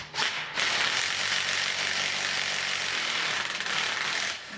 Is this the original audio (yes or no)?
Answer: yes